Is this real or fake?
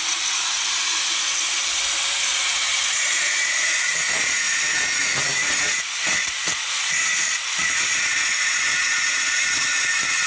fake